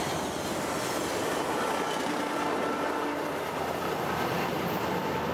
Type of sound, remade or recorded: recorded